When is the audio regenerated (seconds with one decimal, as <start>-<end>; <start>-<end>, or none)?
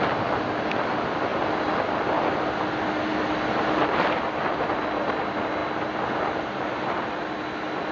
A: none